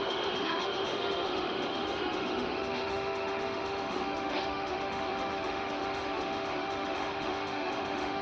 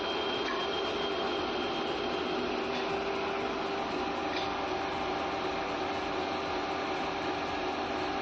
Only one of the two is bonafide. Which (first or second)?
second